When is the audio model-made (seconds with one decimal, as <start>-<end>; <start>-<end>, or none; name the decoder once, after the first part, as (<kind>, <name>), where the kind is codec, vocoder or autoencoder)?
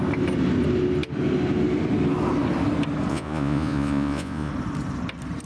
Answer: 3.1-4.5 (vocoder, Vocos)